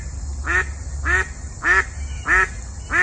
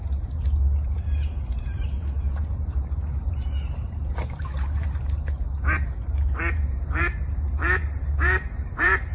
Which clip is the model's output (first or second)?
second